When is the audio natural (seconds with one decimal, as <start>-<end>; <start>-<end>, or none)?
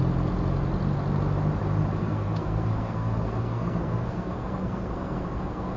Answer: 0.0-2.0